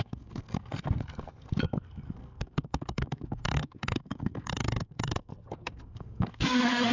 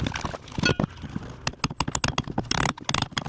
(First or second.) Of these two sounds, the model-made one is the first